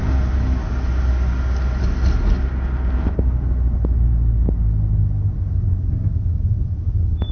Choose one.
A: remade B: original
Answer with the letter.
B